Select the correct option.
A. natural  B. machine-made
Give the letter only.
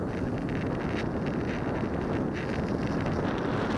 A